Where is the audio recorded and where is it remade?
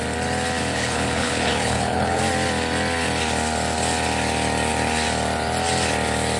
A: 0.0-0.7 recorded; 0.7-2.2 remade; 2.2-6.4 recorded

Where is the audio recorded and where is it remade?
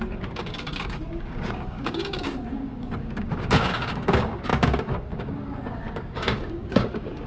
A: 0.0-7.3 remade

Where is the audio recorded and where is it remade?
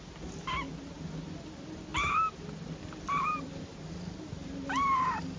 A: 0.0-5.4 recorded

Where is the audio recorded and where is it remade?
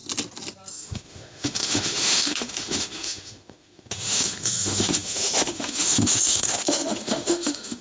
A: 0.0-0.7 recorded; 0.7-7.8 remade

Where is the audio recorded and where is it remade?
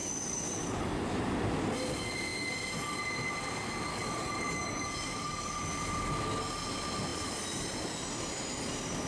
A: 0.0-0.8 remade; 0.8-3.9 recorded; 3.9-5.5 remade; 5.5-9.1 recorded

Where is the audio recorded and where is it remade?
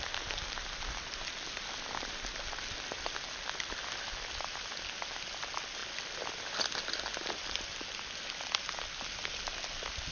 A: 0.0-10.1 recorded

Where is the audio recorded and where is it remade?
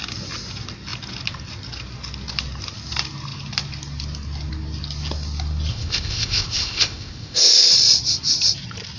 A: 0.0-5.7 recorded; 5.7-7.7 remade; 7.7-9.0 recorded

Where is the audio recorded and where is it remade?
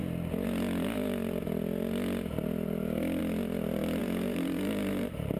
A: 0.0-4.0 recorded; 4.0-5.4 remade